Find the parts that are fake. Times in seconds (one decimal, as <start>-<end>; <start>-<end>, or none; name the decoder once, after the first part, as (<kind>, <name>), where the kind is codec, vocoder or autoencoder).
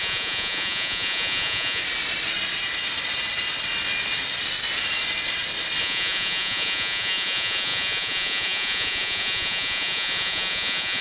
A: 0.0-1.8 (vocoder, Vocos); 5.8-11.0